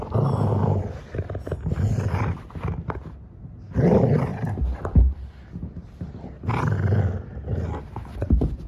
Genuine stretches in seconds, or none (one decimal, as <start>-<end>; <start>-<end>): 0.0-4.3; 6.3-8.7